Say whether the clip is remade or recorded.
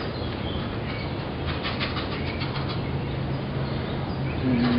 recorded